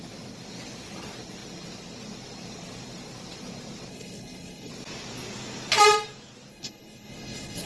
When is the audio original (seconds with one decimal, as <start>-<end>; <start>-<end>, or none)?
0.0-3.9; 4.7-6.5